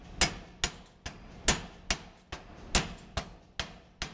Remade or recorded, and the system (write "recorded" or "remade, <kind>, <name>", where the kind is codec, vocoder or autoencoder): recorded